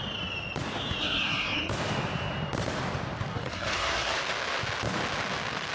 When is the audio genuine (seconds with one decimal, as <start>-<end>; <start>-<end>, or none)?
0.0-1.0; 1.7-3.3; 4.2-5.7